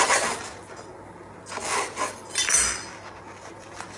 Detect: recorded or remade recorded